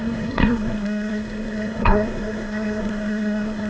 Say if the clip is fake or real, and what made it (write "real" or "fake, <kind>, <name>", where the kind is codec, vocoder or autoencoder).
fake, codec, SNAC